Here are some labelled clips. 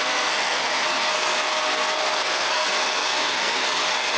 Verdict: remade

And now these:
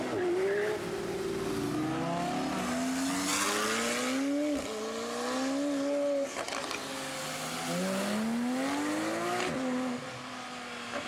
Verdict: recorded